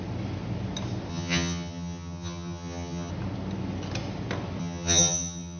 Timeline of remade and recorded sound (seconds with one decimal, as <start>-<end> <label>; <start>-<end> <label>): 0.0-1.1 recorded; 1.1-3.1 remade; 3.1-4.6 recorded; 4.6-5.6 remade